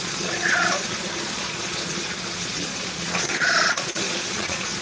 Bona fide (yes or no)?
no